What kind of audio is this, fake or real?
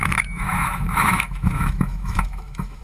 fake